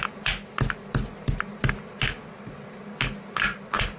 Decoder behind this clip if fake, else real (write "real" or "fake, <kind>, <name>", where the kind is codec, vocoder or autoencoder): real